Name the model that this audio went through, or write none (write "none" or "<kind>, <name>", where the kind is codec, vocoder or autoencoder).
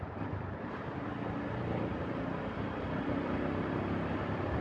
vocoder, BigVGAN v2